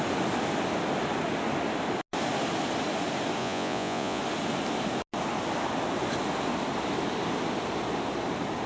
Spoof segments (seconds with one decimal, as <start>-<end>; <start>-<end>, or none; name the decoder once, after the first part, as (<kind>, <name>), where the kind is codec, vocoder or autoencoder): 3.4-4.2 (vocoder, Vocos)